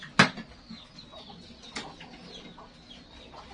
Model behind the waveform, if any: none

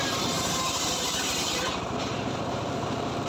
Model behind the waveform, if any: vocoder, BigVGAN v2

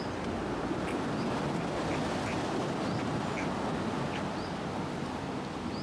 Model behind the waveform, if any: none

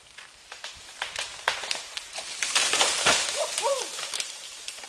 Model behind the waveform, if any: vocoder, BigVGAN v2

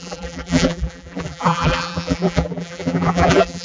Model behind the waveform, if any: vocoder, BigVGAN v2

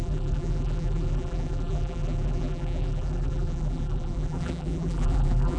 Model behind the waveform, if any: vocoder, BigVGAN v2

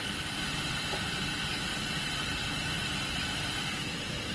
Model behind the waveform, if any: vocoder, BigVGAN v2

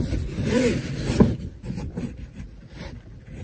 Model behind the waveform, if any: vocoder, BigVGAN v2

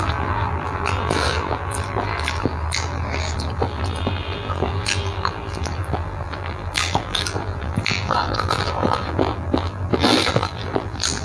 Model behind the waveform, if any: vocoder, BigVGAN v2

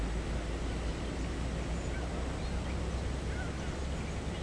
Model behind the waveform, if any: none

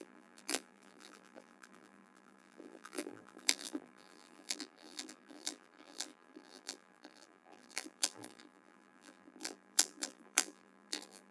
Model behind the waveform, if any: vocoder, BigVGAN v2